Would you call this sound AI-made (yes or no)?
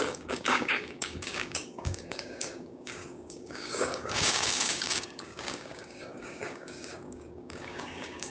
yes